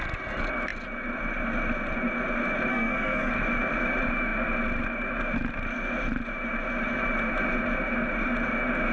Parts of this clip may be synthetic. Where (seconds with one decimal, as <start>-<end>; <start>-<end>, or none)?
2.7-3.3